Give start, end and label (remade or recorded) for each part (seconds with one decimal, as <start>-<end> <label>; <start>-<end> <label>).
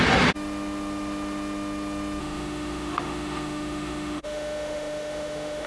0.0-2.2 recorded; 2.2-5.7 remade